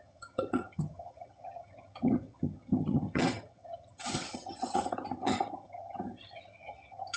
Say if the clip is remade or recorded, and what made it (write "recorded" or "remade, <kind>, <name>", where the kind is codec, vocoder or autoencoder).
remade, vocoder, HiFi-GAN